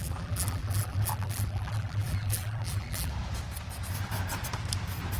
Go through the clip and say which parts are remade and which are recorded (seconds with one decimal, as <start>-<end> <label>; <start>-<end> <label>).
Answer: 0.0-3.1 remade; 3.1-5.2 recorded